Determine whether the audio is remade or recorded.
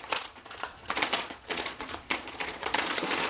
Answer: remade